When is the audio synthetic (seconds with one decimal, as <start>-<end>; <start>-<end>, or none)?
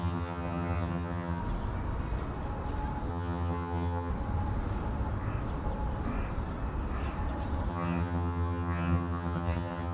0.0-1.4; 3.1-4.1; 7.7-9.9